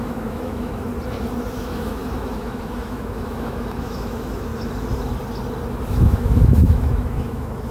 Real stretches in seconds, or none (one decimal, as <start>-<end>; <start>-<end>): 0.9-1.5; 4.5-5.9